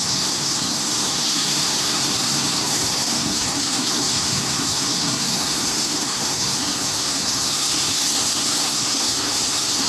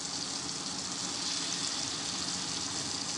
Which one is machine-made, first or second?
first